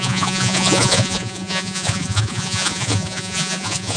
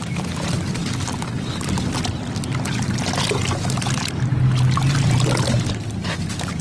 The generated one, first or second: first